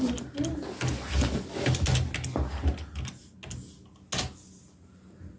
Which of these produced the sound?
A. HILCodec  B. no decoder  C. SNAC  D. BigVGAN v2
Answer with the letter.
B